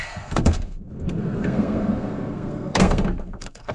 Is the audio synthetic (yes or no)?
yes